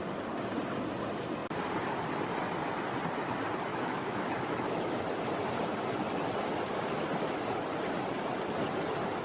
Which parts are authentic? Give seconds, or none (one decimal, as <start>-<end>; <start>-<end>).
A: 0.0-3.7; 5.0-9.2